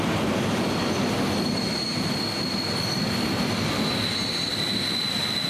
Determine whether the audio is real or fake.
real